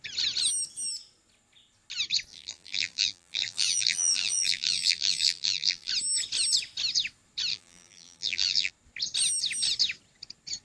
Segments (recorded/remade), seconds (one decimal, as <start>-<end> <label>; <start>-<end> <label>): 0.0-2.3 recorded; 2.3-5.9 remade; 5.9-7.5 recorded; 7.5-8.7 remade; 8.7-10.6 recorded